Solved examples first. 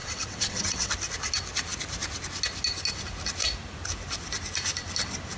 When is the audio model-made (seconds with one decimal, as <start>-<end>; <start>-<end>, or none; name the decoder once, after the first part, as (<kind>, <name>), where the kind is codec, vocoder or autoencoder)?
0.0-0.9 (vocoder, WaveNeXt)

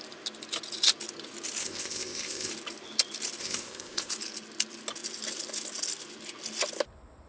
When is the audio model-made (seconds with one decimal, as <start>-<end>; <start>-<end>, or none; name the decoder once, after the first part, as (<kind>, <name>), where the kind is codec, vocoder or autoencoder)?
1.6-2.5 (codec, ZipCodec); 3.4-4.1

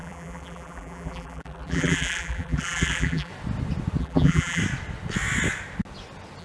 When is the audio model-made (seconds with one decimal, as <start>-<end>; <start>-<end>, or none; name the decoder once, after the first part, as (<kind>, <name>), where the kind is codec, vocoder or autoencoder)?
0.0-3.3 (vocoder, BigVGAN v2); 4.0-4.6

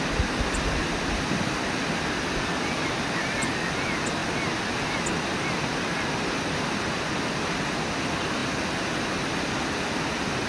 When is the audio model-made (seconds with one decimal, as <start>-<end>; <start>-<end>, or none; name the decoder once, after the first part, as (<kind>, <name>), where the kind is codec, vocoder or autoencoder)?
none

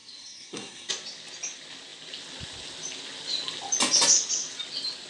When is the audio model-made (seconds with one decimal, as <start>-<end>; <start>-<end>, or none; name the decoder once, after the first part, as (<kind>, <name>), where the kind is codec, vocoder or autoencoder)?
0.0-0.9 (codec, SNAC)